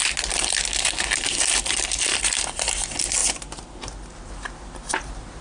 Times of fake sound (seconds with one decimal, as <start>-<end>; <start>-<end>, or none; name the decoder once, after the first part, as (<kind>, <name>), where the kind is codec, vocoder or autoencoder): none